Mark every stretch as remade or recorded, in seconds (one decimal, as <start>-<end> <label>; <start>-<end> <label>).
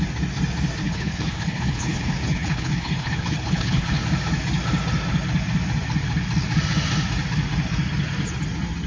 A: 0.0-0.8 recorded; 0.8-4.0 remade; 4.0-8.9 recorded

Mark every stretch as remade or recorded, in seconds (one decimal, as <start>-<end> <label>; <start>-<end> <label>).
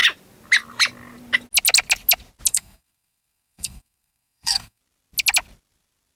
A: 0.0-2.5 recorded; 2.5-4.8 remade; 4.8-6.2 recorded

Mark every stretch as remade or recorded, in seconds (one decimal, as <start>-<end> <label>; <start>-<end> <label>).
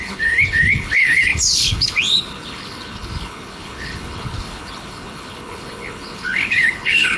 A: 0.0-7.2 remade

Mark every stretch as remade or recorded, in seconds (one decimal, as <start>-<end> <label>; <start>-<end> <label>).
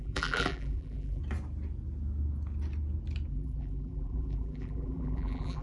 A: 0.0-1.2 remade; 1.2-3.3 recorded; 3.3-5.6 remade